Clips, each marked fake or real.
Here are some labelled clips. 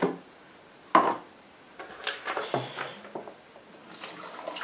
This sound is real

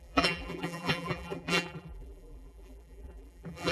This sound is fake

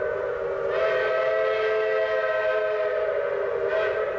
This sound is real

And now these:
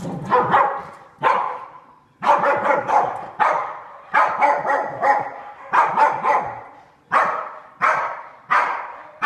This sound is fake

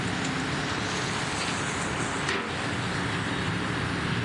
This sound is real